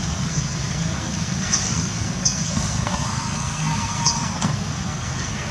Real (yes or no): no